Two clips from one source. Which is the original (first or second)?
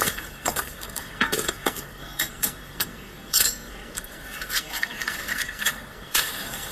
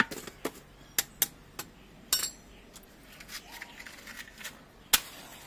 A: second